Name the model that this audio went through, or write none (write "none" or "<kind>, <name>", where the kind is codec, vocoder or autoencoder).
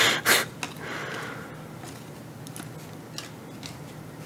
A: none